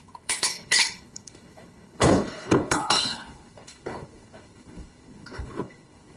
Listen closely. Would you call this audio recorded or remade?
remade